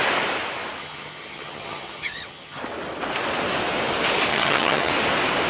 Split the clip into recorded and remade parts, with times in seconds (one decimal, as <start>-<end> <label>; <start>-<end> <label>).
0.0-0.8 recorded; 0.8-2.6 remade; 2.6-4.3 recorded; 4.3-4.9 remade; 4.9-5.5 recorded